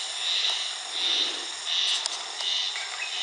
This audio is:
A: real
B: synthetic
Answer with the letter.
A